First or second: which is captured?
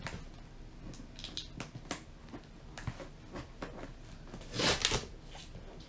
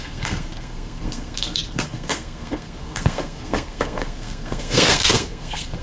first